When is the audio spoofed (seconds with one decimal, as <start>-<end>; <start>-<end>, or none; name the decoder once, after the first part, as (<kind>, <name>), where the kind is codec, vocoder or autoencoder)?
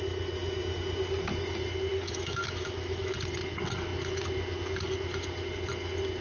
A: 1.9-3.1 (autoencoder, DAC-VAE)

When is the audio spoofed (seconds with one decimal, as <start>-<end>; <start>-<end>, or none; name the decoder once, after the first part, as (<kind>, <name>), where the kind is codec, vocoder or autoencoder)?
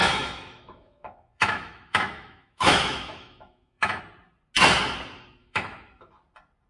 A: 0.0-4.0 (autoencoder, DAC-VAE); 5.4-6.1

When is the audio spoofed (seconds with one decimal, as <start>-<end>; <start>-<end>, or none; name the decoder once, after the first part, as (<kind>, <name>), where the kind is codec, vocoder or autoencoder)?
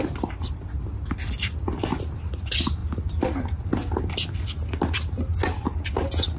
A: none